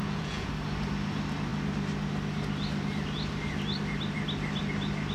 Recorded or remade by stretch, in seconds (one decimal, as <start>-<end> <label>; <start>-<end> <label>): 0.0-0.5 remade; 0.5-5.1 recorded